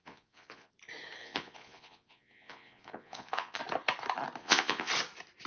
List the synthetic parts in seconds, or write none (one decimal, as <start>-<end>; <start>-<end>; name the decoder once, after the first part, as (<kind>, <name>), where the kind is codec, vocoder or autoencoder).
0.0-0.7 (vocoder, Vocos); 1.2-3.6; 4.4-4.9